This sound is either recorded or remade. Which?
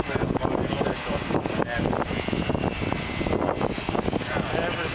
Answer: recorded